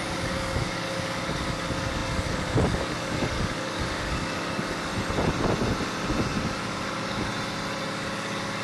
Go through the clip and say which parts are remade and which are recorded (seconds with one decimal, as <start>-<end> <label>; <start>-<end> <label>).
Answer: 0.0-4.9 remade; 4.9-6.4 recorded; 6.4-7.3 remade; 7.3-7.9 recorded; 7.9-8.6 remade